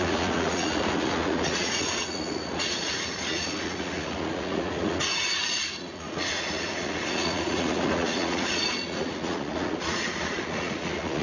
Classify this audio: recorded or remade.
remade